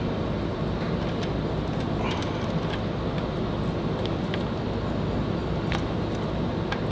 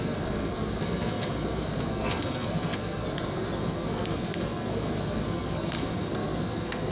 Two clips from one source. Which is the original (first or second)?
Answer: first